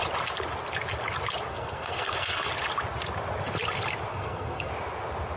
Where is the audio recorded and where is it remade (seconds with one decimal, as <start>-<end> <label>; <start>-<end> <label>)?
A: 0.0-1.5 recorded; 1.5-2.5 remade; 2.5-4.1 recorded; 4.1-4.7 remade; 4.7-5.4 recorded